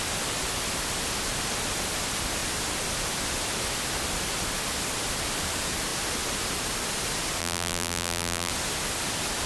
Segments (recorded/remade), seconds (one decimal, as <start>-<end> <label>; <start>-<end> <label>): 0.0-7.4 recorded; 7.4-8.5 remade; 8.5-9.5 recorded